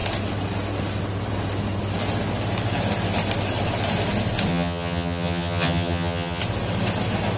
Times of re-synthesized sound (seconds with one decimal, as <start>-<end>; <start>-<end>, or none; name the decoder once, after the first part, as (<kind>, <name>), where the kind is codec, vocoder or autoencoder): 4.5-6.4 (vocoder, HiFi-GAN)